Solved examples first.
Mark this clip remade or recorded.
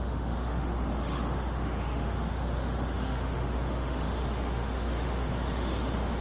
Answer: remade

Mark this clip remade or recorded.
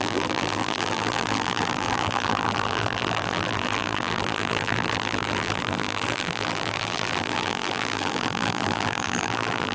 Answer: remade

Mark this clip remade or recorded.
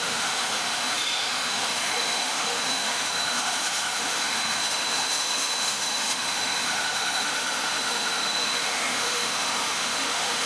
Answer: remade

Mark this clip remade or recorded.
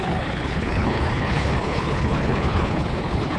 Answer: remade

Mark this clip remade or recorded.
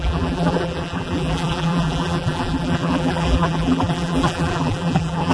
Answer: remade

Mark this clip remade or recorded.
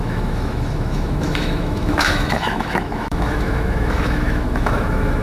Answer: remade